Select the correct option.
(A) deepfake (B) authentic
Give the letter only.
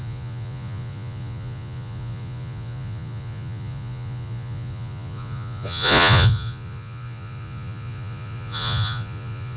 A